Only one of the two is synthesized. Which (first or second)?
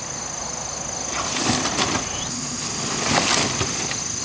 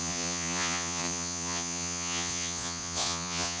second